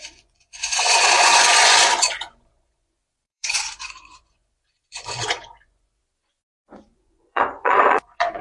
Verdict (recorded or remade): remade